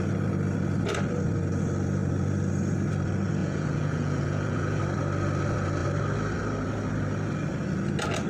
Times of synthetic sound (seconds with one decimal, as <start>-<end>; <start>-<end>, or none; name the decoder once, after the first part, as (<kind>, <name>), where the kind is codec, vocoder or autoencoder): 3.4-4.8 (vocoder, Vocos)